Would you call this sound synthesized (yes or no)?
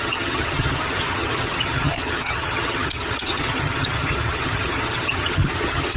yes